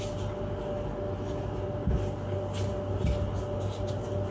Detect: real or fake real